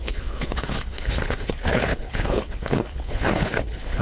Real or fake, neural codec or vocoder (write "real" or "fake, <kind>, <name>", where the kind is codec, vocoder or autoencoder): fake, codec, HILCodec